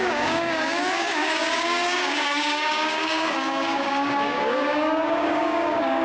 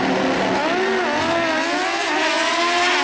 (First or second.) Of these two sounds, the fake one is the first